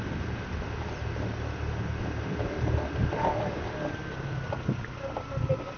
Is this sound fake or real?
real